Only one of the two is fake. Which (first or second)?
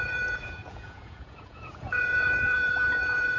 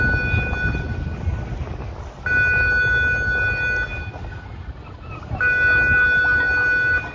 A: first